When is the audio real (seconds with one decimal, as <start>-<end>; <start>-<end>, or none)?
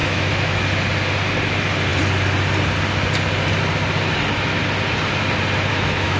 0.6-5.7